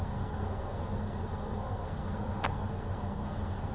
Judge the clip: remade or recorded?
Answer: remade